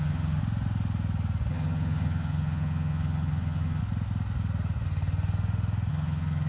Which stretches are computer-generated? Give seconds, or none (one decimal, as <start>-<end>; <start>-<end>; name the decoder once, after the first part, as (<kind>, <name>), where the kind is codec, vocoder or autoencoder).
0.0-0.4 (vocoder, HiFi-GAN); 1.5-3.8; 5.9-6.5